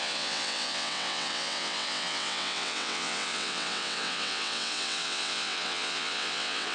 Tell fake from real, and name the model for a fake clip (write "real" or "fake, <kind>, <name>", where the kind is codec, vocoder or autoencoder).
fake, vocoder, WaveNeXt